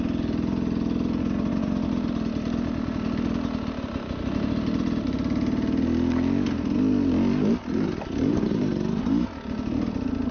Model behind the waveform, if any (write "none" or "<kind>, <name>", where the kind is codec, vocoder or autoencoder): none